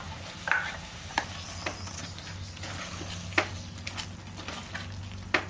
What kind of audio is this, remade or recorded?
recorded